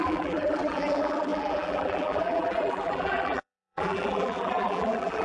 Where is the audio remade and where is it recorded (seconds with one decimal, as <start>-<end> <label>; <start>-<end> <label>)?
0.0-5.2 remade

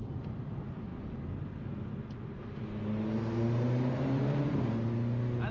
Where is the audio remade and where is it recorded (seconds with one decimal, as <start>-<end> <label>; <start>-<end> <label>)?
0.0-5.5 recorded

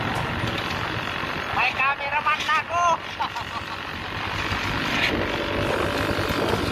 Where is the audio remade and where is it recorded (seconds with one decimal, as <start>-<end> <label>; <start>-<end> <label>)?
0.0-6.7 recorded

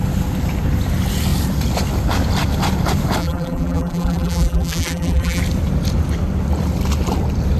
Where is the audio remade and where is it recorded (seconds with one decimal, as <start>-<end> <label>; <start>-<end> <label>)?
0.0-3.2 recorded; 3.2-5.4 remade; 5.4-7.6 recorded

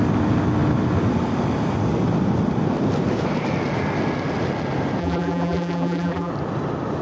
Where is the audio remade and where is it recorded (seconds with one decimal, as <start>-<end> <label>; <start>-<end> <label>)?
0.0-5.0 recorded; 5.0-6.3 remade; 6.3-7.0 recorded

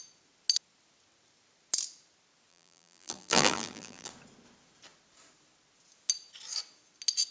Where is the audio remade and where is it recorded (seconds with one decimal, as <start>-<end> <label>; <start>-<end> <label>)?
0.0-2.5 recorded; 2.5-4.1 remade; 4.1-7.3 recorded